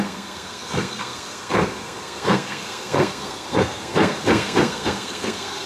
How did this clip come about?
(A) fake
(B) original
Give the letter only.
A